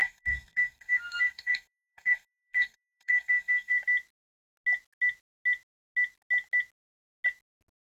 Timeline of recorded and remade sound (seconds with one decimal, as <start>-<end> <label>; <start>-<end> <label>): 0.0-3.7 remade; 3.7-7.8 recorded